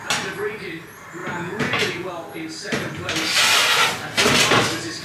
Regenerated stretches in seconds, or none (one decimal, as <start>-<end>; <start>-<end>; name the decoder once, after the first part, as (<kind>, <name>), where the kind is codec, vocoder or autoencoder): 1.2-2.1 (vocoder, Vocos)